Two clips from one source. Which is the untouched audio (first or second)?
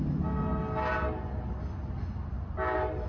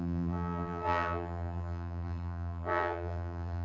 first